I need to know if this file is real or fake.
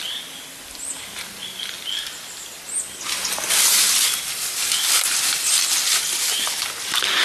real